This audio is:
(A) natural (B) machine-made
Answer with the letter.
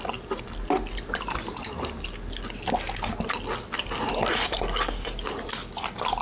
A